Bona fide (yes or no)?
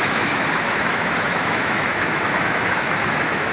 no